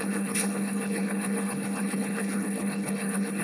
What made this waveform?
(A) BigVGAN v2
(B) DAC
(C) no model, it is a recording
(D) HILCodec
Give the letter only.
D